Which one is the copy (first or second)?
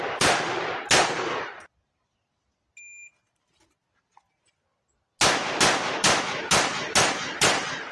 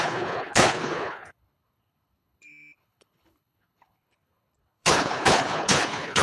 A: second